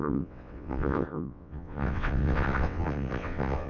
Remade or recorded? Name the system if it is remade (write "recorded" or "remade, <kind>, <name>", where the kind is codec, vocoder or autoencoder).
remade, vocoder, WaveNeXt